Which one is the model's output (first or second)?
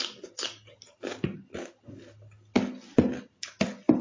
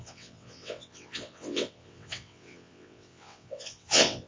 second